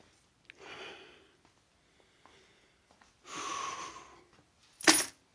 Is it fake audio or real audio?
real